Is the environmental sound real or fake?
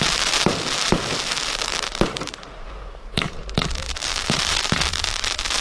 fake